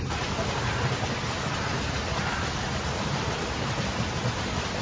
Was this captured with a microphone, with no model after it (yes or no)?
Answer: yes